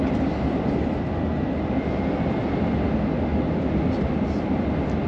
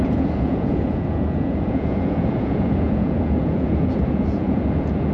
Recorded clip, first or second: first